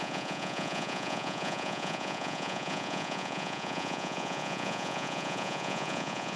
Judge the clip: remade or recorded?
remade